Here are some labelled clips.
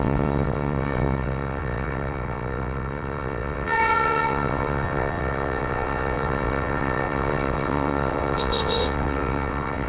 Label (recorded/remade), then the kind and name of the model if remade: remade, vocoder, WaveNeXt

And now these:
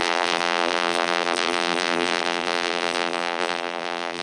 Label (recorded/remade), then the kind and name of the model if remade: remade, vocoder, BigVGAN v2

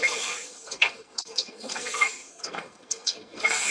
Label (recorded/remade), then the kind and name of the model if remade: remade, codec, SNAC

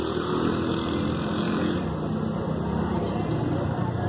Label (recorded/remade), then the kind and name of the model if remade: recorded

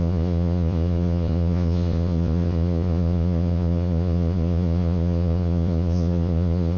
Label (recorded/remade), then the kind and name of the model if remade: remade, vocoder, Vocos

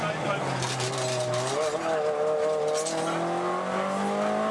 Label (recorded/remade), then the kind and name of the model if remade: recorded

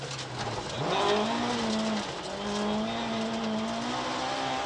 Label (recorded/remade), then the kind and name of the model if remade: recorded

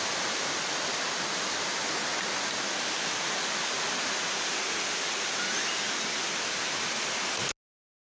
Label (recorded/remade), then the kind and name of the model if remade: recorded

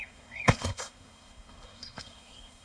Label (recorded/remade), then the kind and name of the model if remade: remade, codec, SNAC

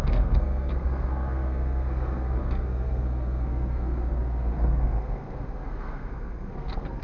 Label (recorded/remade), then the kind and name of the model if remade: remade, codec, SNAC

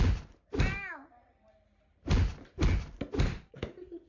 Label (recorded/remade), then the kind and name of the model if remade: recorded